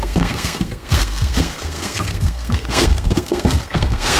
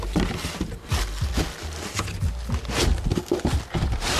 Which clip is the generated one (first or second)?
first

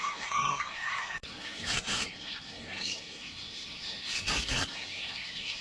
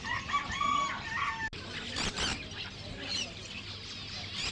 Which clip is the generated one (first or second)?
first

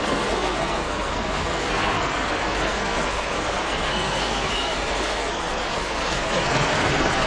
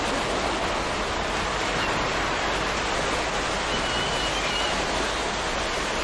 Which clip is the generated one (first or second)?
first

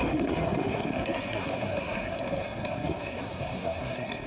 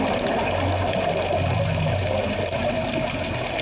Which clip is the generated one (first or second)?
first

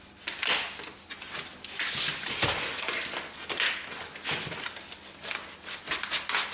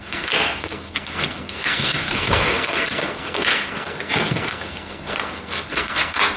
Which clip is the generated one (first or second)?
second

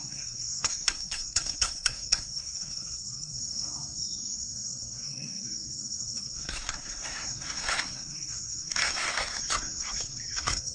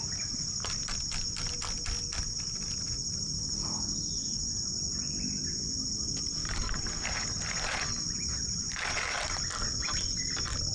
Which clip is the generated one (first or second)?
first